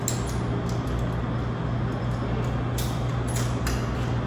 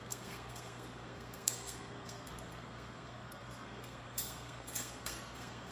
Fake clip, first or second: second